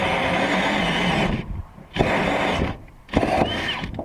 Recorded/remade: recorded